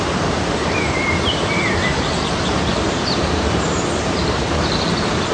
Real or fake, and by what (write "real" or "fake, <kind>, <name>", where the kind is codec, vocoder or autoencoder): fake, vocoder, BigVGAN v2